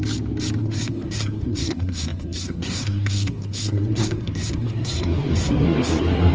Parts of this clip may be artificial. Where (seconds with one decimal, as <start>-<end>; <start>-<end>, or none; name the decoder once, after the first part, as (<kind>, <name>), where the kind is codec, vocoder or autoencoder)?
0.6-6.3 (codec, SNAC)